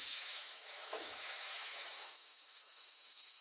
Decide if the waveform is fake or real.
fake